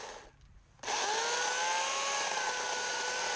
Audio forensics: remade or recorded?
recorded